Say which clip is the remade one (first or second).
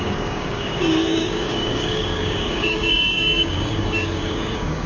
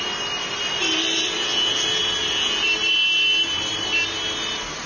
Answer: first